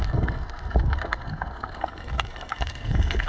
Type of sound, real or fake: fake